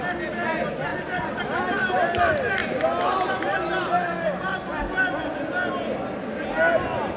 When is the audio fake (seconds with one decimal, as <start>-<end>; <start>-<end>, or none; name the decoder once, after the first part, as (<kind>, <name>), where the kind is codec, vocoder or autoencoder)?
none